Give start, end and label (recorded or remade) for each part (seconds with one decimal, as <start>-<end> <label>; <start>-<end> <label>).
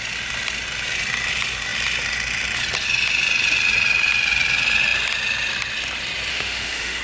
0.0-6.3 recorded; 6.3-7.0 remade